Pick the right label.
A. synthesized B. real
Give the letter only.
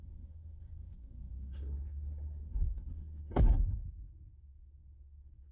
A